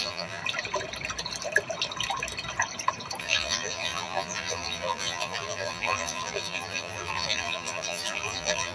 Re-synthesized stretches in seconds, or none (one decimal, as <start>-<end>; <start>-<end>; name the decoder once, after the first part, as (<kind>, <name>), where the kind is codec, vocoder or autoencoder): 0.0-0.4 (vocoder, BigVGAN v2); 3.2-8.7